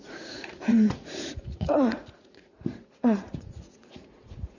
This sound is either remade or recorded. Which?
remade